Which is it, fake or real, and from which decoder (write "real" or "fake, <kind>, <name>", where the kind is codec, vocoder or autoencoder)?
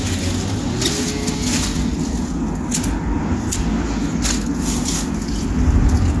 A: real